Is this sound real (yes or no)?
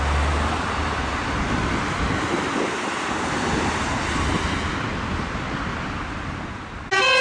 yes